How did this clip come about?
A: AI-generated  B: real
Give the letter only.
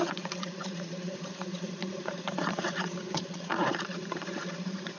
A